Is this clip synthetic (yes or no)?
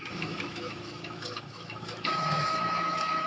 yes